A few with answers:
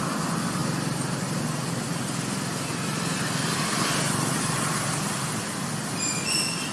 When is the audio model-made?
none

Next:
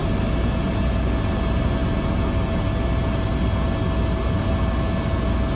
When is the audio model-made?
none

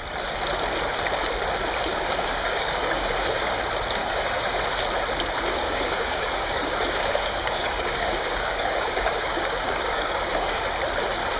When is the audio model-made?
1.9-3.6; 4.0-4.6; 5.5-10.6